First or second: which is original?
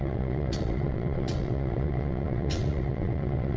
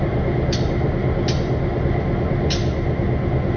second